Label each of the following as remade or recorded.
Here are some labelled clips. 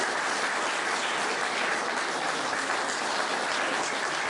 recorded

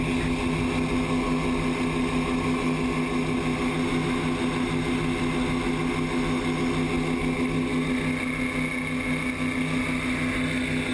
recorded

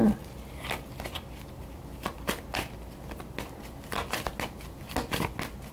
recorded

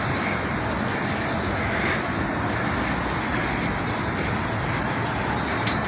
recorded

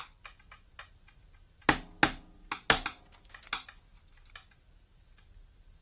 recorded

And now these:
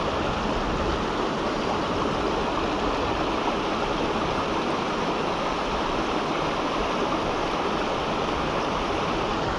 recorded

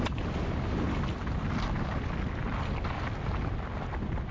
recorded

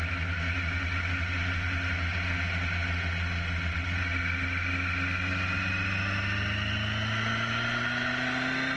recorded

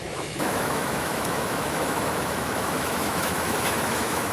remade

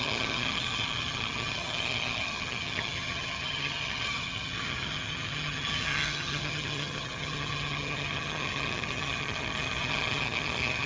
remade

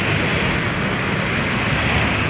recorded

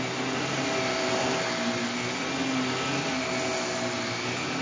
recorded